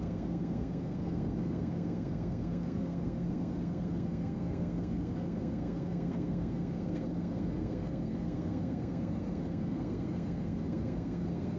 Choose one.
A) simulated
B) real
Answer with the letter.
A